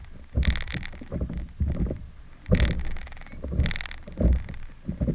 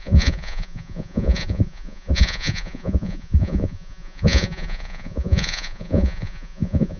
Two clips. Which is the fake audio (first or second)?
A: second